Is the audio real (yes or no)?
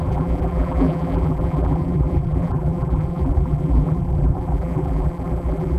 no